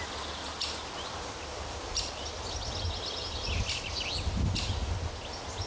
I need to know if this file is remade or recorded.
recorded